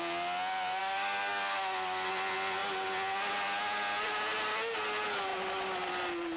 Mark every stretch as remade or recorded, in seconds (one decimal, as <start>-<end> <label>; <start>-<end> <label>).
0.0-0.8 recorded; 0.8-2.1 remade; 2.1-6.4 recorded